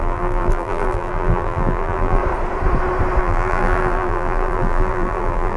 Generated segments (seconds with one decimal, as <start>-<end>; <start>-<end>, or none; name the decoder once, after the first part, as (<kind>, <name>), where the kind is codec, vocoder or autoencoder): 0.0-2.2 (vocoder, BigVGAN v2); 3.2-5.6